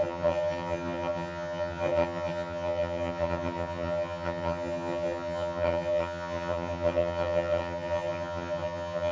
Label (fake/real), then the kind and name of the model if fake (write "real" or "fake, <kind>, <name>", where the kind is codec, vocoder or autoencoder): fake, vocoder, HiFi-GAN